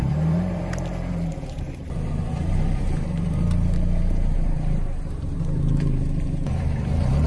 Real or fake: fake